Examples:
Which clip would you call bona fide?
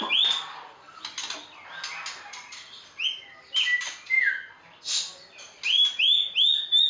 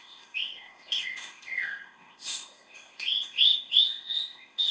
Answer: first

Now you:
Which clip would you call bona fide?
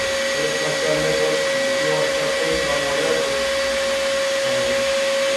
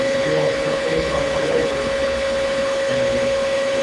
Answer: first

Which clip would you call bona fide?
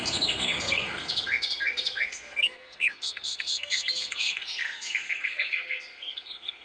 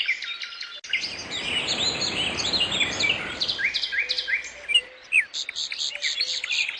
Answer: second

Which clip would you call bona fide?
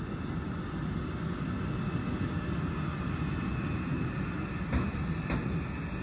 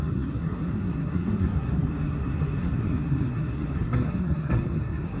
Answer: first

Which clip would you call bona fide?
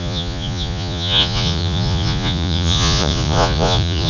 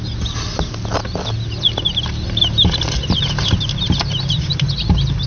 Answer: second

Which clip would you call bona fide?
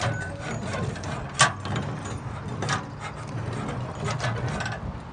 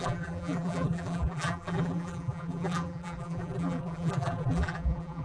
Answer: first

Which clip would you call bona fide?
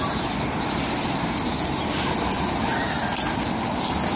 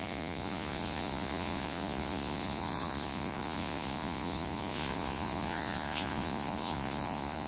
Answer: first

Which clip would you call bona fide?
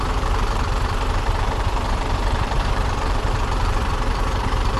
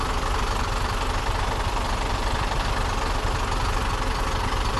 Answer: second